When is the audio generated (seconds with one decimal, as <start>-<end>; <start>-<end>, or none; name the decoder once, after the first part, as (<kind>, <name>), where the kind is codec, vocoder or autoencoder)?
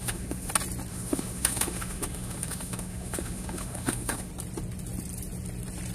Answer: 0.0-0.5 (autoencoder, DAC-VAE); 0.9-4.3